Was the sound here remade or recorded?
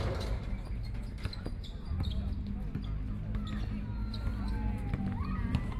recorded